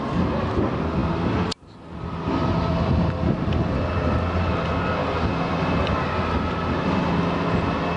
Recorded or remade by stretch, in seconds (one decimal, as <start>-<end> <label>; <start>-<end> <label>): 0.0-8.0 recorded